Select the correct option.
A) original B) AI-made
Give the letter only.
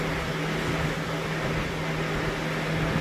A